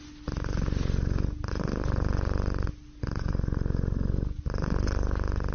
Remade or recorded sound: recorded